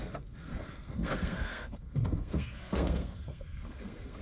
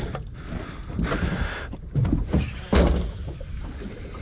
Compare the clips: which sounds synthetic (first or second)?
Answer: first